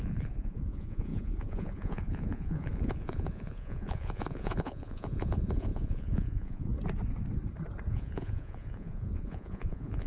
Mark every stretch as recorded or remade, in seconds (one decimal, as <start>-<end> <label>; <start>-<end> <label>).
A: 0.0-6.7 remade; 6.7-7.9 recorded; 7.9-10.1 remade